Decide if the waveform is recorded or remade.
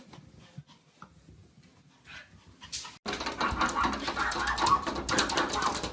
recorded